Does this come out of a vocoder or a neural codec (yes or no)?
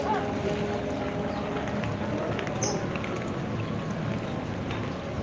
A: no